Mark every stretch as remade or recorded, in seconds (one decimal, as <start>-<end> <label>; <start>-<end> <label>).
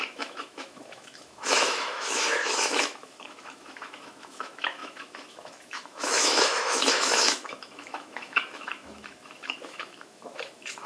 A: 0.0-10.9 remade